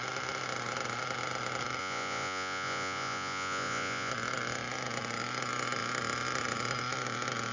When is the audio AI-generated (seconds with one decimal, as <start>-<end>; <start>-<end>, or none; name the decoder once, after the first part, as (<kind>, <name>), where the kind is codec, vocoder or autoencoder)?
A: 1.8-4.1 (vocoder, Vocos)